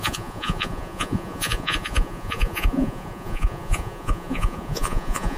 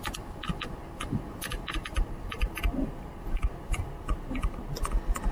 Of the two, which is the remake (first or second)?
first